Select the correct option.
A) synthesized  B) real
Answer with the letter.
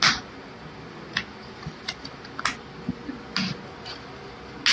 B